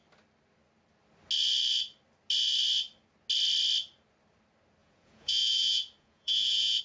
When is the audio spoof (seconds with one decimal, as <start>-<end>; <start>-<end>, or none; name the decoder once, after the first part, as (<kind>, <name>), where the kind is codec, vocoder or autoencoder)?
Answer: 4.8-6.8 (vocoder, Vocos)